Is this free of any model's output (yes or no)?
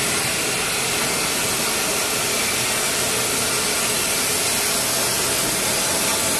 yes